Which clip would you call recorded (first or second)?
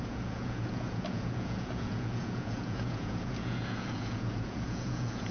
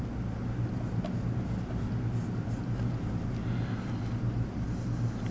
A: second